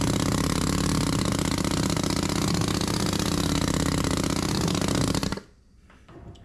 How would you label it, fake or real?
real